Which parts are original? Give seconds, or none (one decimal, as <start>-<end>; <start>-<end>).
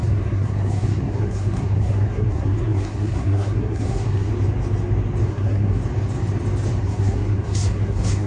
4.3-5.3; 5.8-6.8